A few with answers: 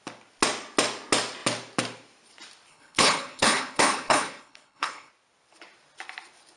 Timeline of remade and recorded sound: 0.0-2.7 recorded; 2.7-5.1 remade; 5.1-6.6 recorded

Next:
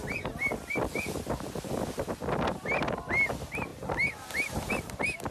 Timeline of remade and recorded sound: 0.0-5.3 recorded

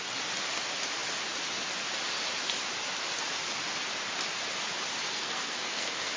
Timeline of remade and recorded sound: 0.0-5.1 recorded; 5.1-6.2 remade

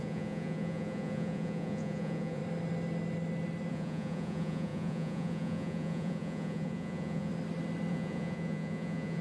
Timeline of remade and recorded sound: 0.0-2.4 remade; 2.4-3.7 recorded; 3.7-7.3 remade; 7.3-7.9 recorded; 7.9-9.2 remade

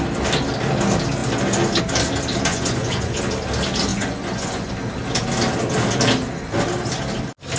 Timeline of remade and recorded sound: 0.0-2.5 recorded; 2.5-3.2 remade; 3.2-3.9 recorded; 3.9-4.7 remade; 4.7-7.6 recorded

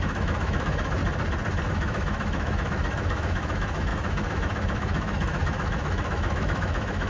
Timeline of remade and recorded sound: 0.0-1.0 remade; 1.0-1.7 recorded; 1.7-7.1 remade

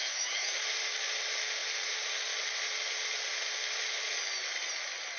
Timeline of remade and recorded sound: 0.0-0.6 remade; 0.6-5.2 recorded